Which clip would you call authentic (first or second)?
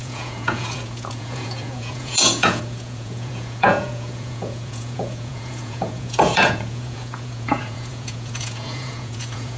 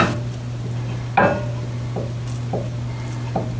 second